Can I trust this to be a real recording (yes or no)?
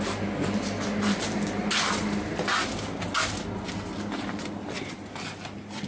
yes